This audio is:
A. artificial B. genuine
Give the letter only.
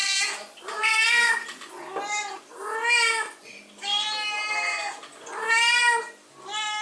B